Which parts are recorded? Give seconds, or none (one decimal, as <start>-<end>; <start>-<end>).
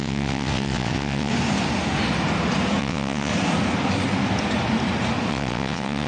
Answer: 1.3-2.8; 3.3-5.3